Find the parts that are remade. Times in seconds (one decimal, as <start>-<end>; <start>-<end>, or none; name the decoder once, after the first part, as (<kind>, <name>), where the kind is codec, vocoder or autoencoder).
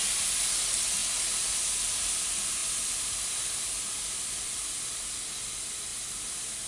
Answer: none